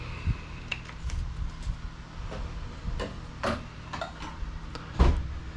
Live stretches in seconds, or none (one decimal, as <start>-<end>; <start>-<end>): 0.0-5.6